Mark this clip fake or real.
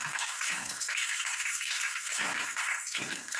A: fake